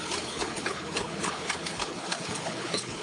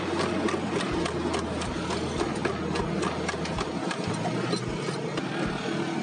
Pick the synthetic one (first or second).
first